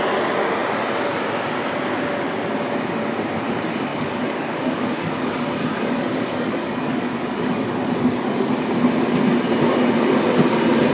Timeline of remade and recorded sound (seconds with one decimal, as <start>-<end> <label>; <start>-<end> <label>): 0.0-3.9 recorded; 3.9-8.5 remade; 8.5-10.9 recorded

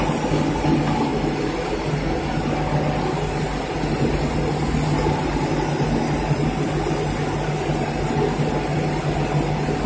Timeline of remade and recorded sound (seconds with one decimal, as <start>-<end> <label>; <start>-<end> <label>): 0.0-9.9 recorded